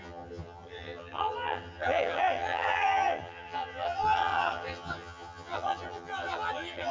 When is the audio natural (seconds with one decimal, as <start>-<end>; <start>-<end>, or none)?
none